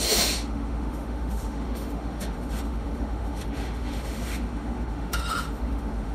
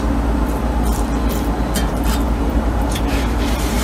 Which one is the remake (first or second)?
first